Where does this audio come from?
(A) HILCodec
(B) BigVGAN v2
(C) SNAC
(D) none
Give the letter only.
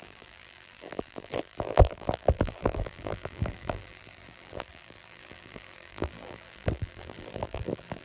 B